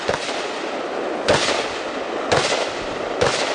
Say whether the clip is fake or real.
real